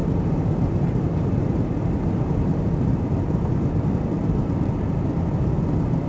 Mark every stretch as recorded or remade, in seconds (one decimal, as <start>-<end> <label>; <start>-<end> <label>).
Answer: 0.0-3.7 remade; 3.7-6.1 recorded